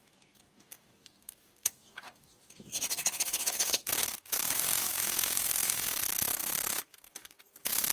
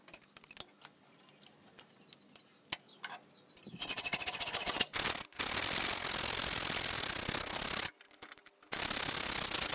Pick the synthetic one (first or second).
first